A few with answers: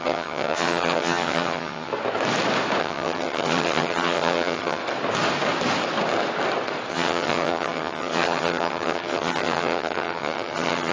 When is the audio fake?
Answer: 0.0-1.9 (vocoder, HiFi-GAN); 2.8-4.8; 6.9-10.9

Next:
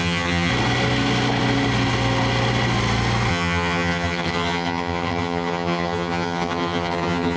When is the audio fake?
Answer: 0.0-0.5 (vocoder, HiFi-GAN); 3.3-7.4